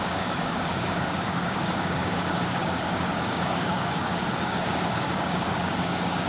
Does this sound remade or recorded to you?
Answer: remade